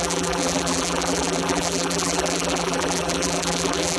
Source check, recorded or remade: remade